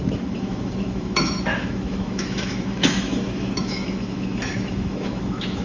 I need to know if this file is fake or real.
fake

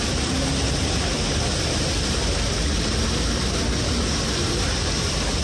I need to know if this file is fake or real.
real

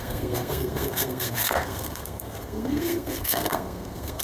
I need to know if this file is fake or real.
fake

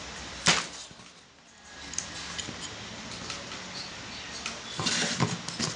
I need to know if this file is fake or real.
real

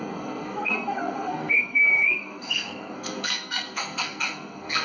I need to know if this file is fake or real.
fake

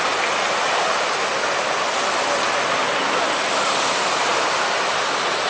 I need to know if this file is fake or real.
real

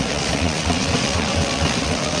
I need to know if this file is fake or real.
fake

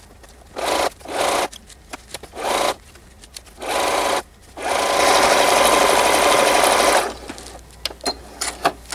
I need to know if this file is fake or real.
real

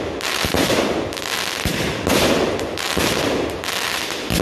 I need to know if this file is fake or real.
real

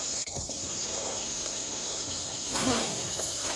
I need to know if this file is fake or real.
fake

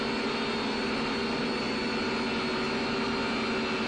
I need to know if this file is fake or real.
real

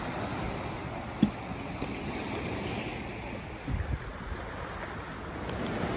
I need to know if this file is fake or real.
real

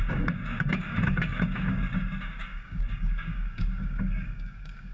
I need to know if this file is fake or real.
fake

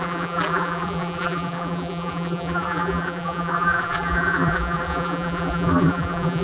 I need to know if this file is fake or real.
fake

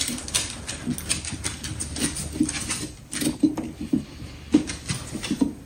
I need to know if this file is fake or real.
real